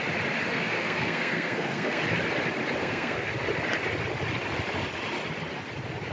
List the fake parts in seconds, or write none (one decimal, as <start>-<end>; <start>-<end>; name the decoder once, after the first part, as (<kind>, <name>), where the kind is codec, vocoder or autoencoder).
0.5-2.0 (codec, SNAC); 2.8-3.3